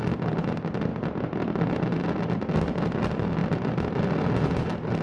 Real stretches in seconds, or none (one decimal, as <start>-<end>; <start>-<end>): 0.0-5.0